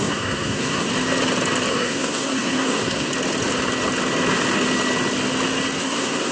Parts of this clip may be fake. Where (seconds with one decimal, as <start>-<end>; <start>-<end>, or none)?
0.0-0.9; 1.7-3.1; 5.8-6.3